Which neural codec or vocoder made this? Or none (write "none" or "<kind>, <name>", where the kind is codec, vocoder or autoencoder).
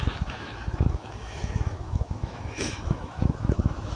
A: autoencoder, DAC-VAE